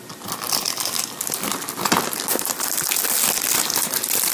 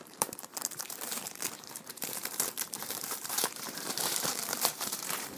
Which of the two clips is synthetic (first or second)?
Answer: second